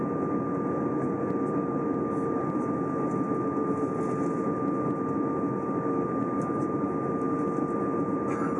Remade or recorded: recorded